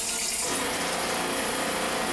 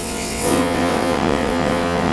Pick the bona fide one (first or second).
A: first